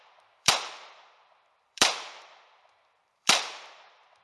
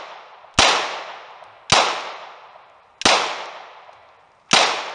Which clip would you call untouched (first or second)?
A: second